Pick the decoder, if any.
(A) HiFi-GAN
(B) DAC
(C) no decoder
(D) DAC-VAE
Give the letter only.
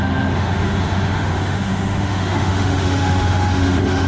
D